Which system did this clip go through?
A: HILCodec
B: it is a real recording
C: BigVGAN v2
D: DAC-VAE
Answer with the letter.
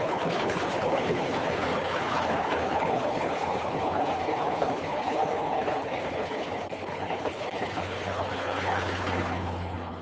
A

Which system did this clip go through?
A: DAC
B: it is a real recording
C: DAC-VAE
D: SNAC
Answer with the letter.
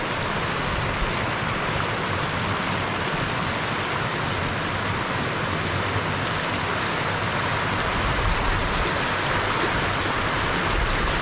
B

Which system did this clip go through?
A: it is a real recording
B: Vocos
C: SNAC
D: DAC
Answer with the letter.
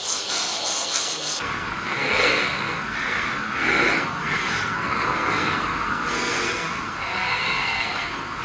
C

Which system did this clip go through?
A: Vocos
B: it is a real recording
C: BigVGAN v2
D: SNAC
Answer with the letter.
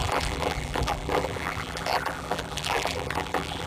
C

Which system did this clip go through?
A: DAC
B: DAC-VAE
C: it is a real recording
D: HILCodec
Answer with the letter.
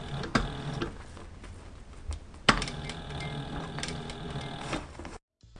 C